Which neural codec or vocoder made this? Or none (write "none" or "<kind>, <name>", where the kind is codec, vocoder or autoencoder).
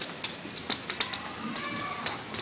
none